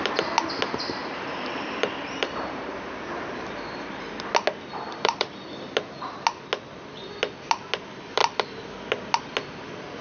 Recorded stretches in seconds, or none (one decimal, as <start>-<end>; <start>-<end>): 0.0-1.0; 2.7-4.7; 5.7-10.0